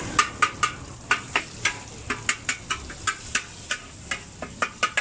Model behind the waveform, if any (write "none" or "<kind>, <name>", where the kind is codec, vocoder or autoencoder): none